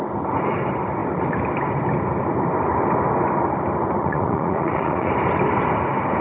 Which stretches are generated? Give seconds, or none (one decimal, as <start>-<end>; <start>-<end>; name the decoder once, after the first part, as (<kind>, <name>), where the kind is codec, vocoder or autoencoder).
4.0-5.1 (vocoder, Vocos)